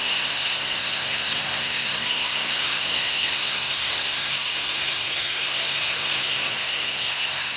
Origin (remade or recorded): remade